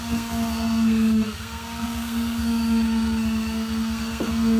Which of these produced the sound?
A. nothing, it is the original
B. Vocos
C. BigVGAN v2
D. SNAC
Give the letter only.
D